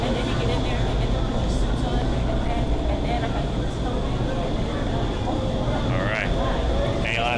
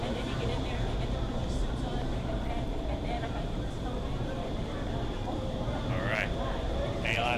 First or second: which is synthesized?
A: second